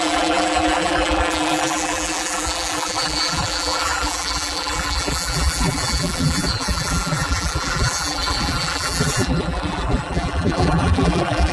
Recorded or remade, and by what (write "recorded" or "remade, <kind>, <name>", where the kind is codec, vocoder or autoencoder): remade, vocoder, BigVGAN v2